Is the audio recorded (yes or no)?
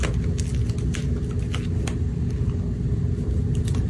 yes